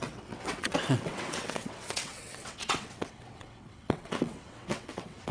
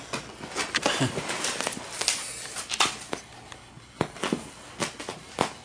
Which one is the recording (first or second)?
second